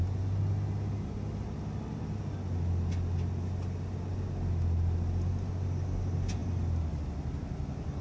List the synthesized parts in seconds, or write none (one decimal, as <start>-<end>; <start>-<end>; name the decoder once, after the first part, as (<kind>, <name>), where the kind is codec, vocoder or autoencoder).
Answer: none